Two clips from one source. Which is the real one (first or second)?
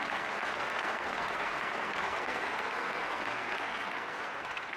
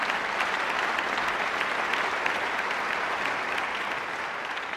second